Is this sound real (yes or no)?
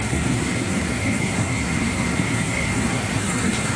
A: no